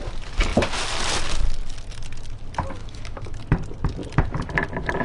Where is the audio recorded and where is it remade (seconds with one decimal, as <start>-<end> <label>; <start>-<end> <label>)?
0.0-2.8 recorded; 2.8-3.4 remade; 3.4-5.0 recorded

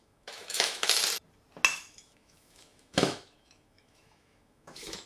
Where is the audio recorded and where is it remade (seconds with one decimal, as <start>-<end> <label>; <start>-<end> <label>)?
0.0-1.0 remade; 1.0-1.7 recorded; 1.7-5.1 remade